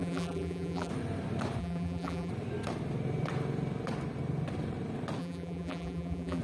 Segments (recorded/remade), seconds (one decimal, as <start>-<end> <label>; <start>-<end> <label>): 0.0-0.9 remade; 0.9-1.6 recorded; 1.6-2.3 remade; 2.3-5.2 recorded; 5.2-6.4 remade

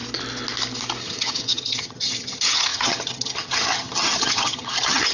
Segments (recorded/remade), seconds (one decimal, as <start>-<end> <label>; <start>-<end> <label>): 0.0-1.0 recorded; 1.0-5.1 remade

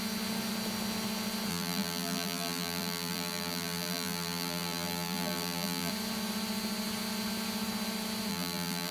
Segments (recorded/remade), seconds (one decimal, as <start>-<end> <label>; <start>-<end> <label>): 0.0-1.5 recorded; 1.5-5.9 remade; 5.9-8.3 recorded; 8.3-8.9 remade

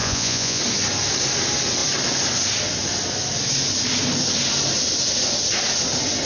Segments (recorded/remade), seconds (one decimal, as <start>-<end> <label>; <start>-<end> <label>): 0.0-0.6 remade; 0.6-6.3 recorded